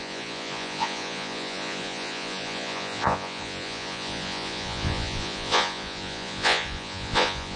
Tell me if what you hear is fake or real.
fake